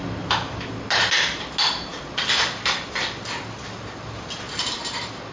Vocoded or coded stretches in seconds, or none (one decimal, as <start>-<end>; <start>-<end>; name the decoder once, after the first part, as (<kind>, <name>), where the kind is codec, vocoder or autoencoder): none